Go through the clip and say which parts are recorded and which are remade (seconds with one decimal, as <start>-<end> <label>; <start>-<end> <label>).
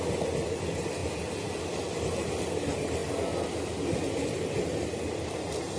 0.0-5.8 recorded